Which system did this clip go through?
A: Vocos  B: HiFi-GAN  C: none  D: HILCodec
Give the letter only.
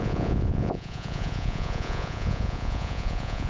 A